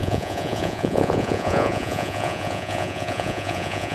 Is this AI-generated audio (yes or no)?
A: yes